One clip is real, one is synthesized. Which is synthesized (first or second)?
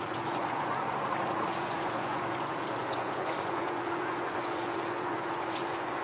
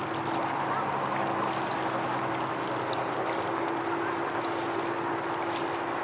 first